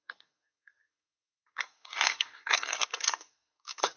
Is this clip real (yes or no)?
no